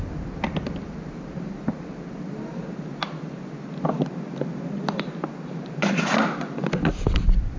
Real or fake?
real